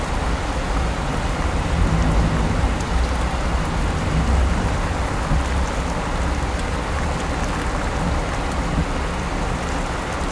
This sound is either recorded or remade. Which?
recorded